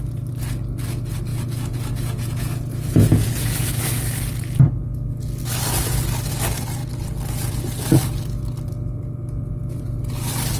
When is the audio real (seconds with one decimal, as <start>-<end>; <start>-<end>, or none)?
0.0-1.3; 4.0-10.6